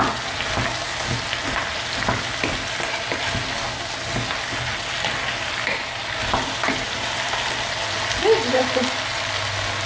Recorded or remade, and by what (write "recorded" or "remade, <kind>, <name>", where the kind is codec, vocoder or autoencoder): recorded